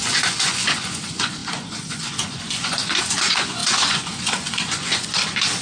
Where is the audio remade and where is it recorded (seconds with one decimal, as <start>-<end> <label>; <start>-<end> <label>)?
0.0-5.6 remade